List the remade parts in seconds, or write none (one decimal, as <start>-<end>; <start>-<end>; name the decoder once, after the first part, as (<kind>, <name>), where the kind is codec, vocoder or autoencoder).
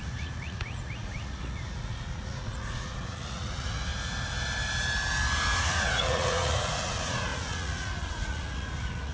0.0-3.9 (vocoder, Vocos); 5.6-9.1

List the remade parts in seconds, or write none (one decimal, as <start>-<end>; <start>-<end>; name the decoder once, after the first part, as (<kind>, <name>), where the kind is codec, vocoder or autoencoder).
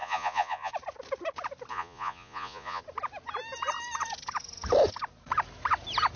0.0-0.7 (vocoder, Vocos); 1.7-2.8